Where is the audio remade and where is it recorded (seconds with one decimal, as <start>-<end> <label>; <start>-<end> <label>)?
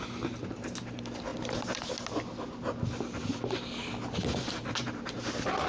0.0-5.7 recorded